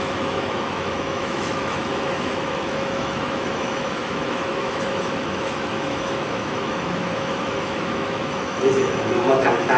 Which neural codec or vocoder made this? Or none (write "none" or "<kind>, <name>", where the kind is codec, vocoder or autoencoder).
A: autoencoder, DAC-VAE